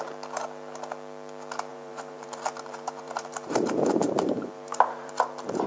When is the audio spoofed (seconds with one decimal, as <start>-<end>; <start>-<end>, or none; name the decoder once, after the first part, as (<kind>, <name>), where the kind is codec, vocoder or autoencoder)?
1.7-5.1 (vocoder, BigVGAN v2)